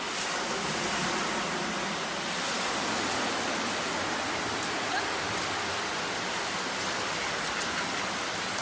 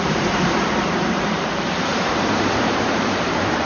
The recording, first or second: first